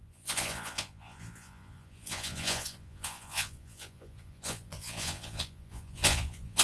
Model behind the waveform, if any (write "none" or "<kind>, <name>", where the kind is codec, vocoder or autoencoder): vocoder, Vocos